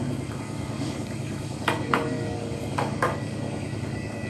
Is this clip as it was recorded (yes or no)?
no